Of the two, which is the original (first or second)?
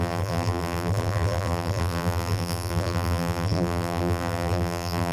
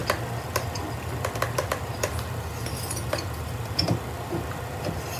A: second